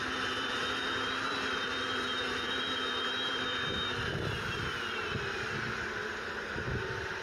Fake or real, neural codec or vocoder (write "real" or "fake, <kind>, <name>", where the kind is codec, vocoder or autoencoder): fake, vocoder, BigVGAN v2